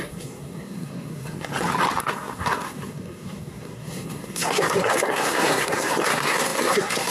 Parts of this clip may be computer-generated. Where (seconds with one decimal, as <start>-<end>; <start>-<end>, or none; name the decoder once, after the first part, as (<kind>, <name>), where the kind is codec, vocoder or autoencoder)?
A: 0.0-1.5 (codec, SNAC); 2.0-7.1